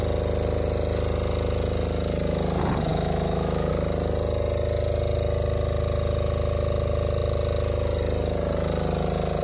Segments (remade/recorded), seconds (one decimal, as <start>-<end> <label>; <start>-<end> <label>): 0.0-2.9 recorded; 2.9-3.7 remade; 3.7-9.4 recorded